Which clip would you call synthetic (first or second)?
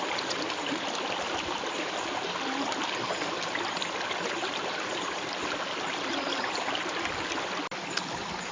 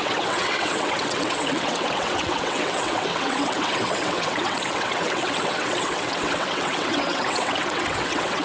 second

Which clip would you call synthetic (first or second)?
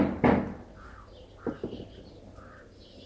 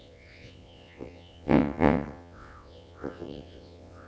second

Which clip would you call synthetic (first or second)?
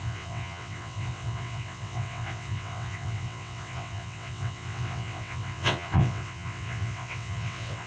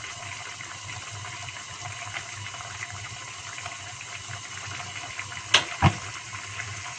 first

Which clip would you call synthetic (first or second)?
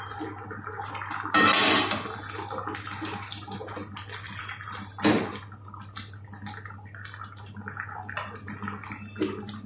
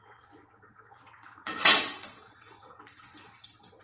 second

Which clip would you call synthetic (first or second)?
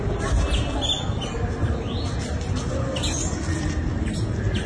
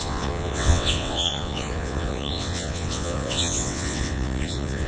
second